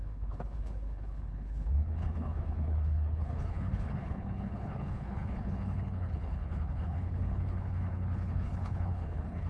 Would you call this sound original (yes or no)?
no